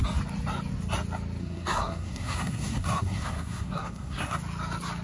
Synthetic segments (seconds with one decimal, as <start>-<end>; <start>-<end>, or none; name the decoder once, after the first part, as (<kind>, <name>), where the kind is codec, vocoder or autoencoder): 1.4-4.4 (codec, SNAC)